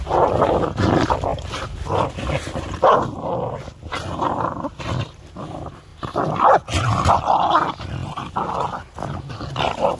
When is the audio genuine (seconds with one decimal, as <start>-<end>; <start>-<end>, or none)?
0.0-10.0